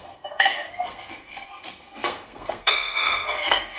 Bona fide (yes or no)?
no